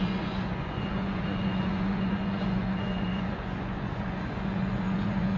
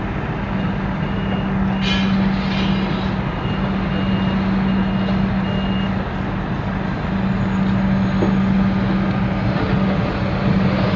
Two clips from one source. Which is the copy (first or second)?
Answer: first